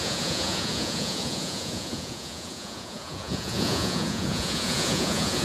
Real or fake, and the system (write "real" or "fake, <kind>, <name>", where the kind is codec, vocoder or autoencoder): fake, vocoder, Vocos